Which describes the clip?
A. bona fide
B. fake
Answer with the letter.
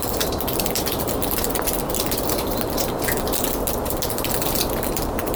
B